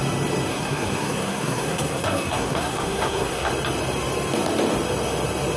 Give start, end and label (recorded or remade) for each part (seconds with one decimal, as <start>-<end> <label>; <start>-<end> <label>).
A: 0.0-0.5 recorded; 0.5-3.5 remade; 3.5-5.6 recorded